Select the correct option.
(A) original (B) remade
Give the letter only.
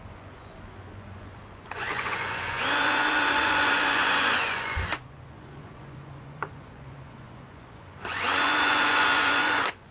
B